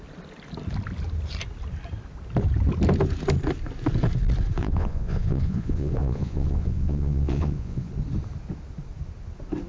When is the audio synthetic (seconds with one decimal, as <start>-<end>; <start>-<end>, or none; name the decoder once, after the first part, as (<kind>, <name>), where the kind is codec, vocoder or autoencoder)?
4.6-7.9 (vocoder, Vocos)